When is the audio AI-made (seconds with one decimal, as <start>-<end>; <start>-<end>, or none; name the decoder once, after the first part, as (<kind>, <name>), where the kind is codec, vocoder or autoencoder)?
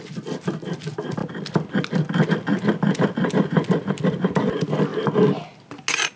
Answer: none